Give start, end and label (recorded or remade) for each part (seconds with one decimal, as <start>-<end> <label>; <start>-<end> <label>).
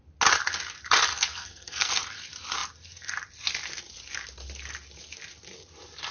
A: 0.0-1.1 recorded; 1.1-2.0 remade; 2.0-6.1 recorded